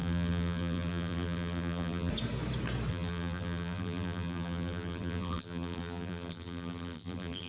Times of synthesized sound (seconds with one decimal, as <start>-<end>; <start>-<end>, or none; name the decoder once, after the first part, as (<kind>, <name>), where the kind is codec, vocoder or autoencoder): 0.0-2.1 (vocoder, BigVGAN v2); 2.9-7.5